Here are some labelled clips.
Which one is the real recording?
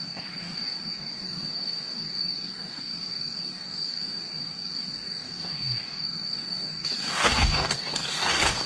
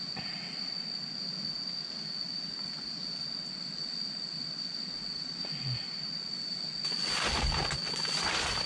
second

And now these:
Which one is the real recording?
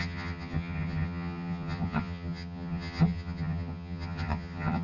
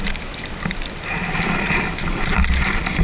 second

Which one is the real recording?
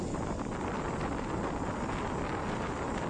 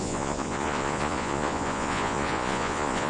first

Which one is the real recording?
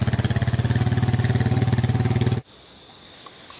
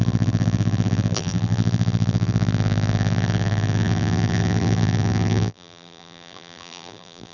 first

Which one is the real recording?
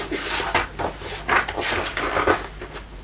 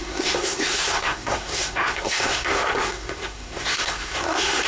first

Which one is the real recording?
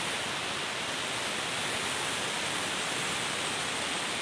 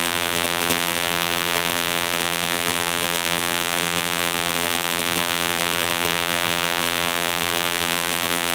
first